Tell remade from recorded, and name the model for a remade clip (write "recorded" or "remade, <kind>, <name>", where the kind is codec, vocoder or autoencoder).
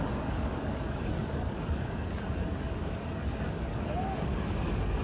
remade, codec, DAC